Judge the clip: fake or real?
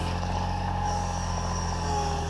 fake